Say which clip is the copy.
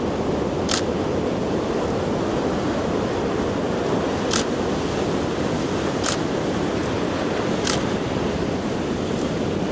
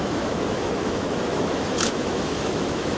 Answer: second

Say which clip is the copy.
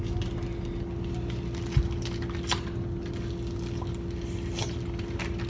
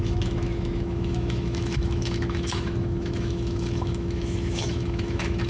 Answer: second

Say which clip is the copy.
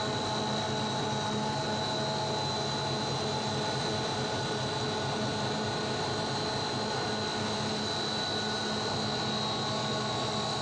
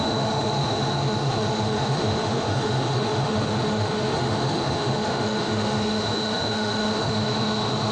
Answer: second